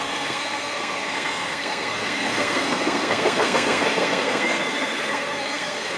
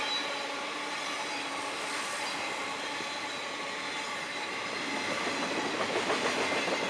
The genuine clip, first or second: second